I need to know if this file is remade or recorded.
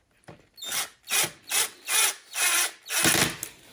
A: recorded